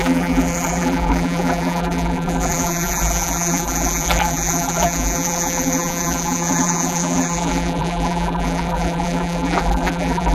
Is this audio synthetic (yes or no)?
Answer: yes